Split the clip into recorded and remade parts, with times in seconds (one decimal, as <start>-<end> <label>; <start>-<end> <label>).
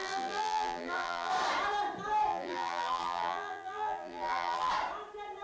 0.0-1.3 remade; 1.3-2.3 recorded; 2.3-4.7 remade; 4.7-5.4 recorded